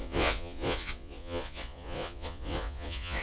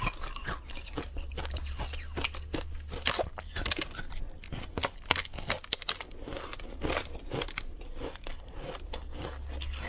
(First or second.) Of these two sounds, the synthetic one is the first